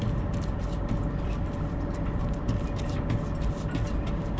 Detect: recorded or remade recorded